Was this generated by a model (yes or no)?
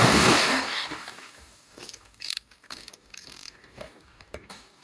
yes